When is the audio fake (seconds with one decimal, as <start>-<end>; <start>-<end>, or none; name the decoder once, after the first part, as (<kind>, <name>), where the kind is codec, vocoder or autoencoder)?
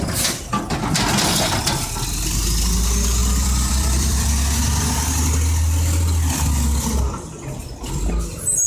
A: 3.2-4.3 (vocoder, BigVGAN v2)